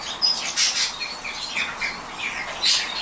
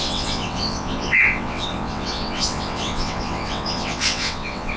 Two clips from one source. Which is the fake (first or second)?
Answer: second